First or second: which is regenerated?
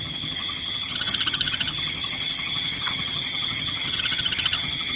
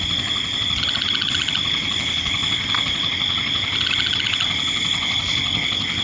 first